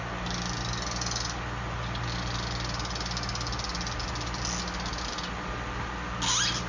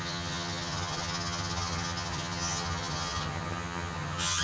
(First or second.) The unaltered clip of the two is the first